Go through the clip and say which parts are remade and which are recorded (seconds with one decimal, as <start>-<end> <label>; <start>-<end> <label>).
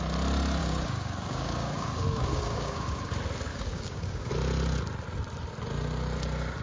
0.0-0.6 recorded; 0.6-3.1 remade; 3.1-3.5 recorded; 3.5-4.3 remade; 4.3-6.6 recorded